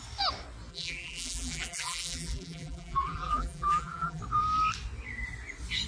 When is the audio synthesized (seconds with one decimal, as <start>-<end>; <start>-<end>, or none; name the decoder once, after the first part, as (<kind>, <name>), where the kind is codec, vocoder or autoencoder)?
0.7-4.2 (vocoder, BigVGAN v2)